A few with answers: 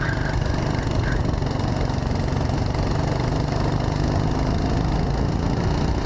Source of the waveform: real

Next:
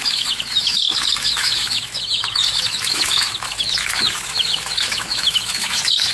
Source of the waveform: fake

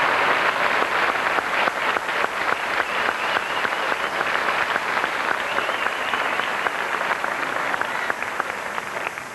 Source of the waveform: real